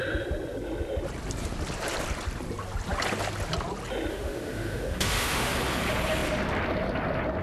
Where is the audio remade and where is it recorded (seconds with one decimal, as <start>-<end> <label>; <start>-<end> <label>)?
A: 0.0-4.1 recorded; 4.1-5.5 remade; 5.5-7.4 recorded